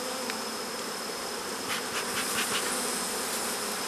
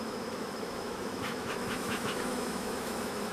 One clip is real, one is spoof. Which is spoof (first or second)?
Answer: second